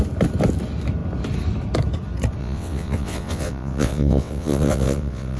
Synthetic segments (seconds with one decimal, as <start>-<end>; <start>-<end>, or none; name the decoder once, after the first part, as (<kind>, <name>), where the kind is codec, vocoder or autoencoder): 2.4-5.4 (vocoder, WaveNeXt)